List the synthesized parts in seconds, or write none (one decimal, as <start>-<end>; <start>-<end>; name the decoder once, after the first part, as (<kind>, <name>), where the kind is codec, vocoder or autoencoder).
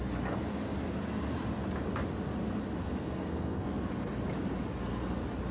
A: 2.8-3.7 (codec, SNAC)